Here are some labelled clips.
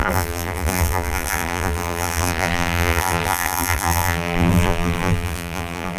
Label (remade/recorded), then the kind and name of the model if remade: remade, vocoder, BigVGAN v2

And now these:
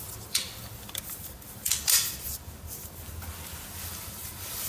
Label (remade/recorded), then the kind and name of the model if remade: remade, vocoder, BigVGAN v2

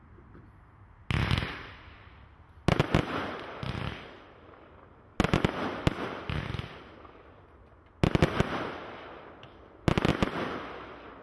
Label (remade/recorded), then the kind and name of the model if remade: recorded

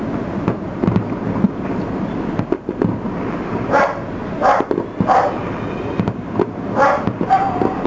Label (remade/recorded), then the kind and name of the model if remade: remade, vocoder, BigVGAN v2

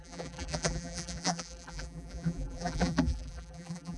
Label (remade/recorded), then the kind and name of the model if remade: remade, vocoder, BigVGAN v2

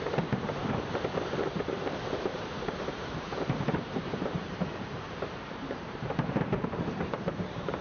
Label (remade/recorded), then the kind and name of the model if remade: remade, vocoder, BigVGAN v2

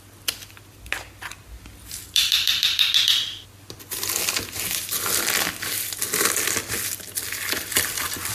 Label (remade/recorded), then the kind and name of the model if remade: recorded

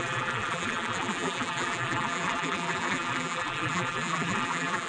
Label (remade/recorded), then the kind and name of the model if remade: remade, vocoder, BigVGAN v2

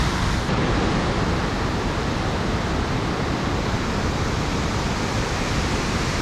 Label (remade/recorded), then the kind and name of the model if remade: recorded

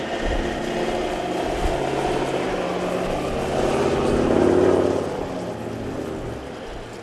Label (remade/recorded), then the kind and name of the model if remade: recorded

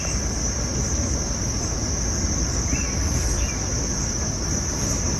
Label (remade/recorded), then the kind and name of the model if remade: recorded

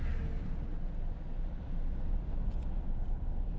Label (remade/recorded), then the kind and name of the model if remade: recorded